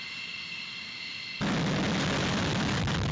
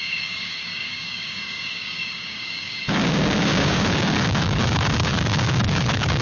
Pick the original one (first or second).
first